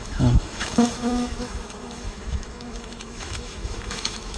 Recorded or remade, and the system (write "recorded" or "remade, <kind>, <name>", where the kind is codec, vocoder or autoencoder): remade, autoencoder, DAC-VAE